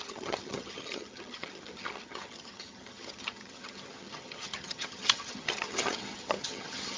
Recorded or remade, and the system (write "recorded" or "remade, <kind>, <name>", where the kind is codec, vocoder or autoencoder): remade, vocoder, HiFi-GAN